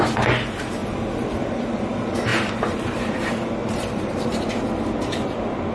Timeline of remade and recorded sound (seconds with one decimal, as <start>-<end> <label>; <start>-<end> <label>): 0.0-0.8 recorded; 0.8-1.6 remade; 1.6-3.6 recorded; 3.6-4.5 remade; 4.5-5.7 recorded